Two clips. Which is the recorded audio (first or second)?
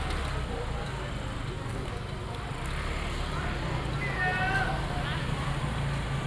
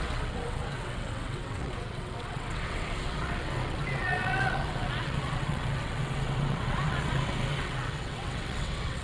first